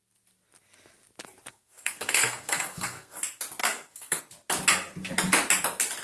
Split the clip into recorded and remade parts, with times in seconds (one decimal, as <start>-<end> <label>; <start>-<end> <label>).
0.0-1.5 recorded; 1.5-3.2 remade; 3.2-3.6 recorded; 3.6-4.2 remade; 4.2-6.0 recorded